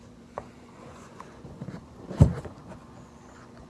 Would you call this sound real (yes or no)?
no